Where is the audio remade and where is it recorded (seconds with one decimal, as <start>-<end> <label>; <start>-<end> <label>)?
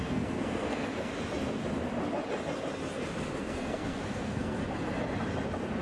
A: 0.0-1.1 remade; 1.1-3.4 recorded; 3.4-4.6 remade; 4.6-5.8 recorded